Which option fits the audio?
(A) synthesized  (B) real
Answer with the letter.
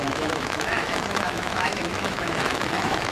A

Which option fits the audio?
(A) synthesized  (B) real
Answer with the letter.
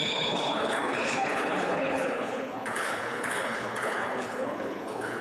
A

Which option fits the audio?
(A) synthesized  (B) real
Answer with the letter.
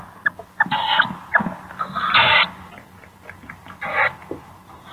B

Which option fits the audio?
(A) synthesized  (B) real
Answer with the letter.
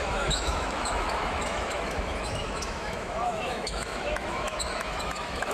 A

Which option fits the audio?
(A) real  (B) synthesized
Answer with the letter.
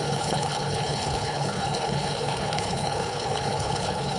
B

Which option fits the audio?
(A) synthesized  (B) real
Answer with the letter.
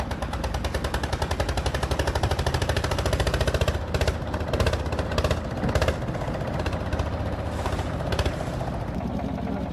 B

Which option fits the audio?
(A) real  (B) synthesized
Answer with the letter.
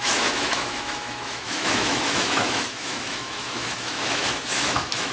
B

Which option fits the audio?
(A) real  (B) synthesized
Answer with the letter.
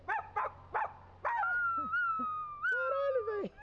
A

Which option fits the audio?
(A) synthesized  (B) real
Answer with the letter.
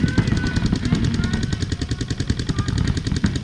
B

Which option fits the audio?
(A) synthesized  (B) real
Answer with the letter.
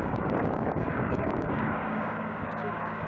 A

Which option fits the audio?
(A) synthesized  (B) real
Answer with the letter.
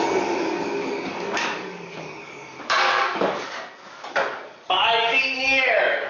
A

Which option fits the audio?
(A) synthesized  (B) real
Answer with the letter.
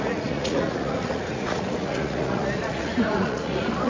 A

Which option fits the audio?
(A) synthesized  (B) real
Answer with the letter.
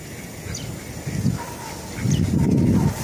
B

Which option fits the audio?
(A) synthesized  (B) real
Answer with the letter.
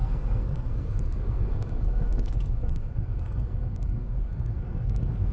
A